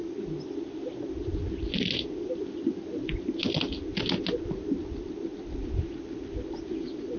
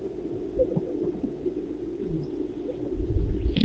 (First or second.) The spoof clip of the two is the second